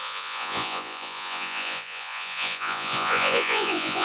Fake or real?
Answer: fake